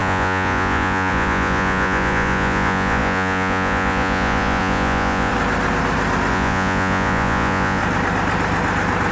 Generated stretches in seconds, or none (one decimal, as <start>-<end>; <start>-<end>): 0.0-5.3; 6.3-7.8